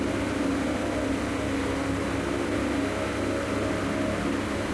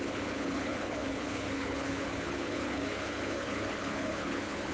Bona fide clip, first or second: first